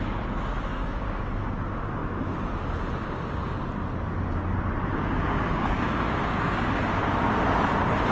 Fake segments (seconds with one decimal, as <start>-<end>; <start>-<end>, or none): 0.7-1.2; 4.9-6.7